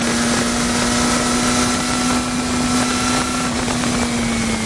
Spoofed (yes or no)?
no